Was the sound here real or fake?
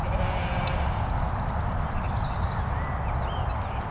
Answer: real